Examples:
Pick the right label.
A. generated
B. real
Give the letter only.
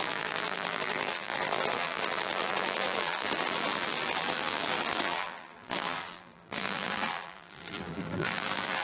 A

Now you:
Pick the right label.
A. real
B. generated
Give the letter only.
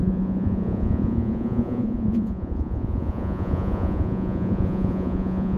B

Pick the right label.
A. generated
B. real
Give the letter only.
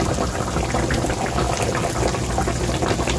B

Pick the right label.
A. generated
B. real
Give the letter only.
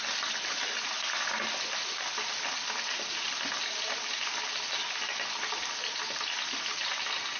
B